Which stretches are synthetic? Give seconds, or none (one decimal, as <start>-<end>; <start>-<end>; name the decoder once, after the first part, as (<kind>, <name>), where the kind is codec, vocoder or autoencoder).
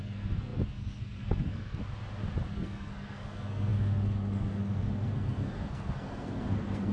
0.0-1.8 (codec, SNAC); 2.5-6.9